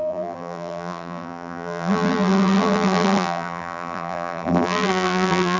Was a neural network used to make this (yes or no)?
yes